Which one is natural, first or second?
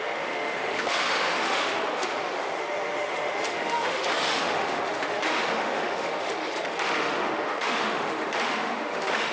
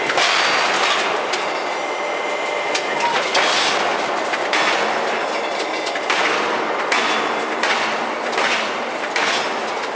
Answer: second